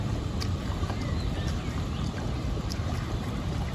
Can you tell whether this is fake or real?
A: real